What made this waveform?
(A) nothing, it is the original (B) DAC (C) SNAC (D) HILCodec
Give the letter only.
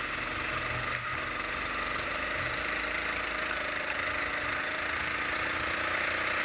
A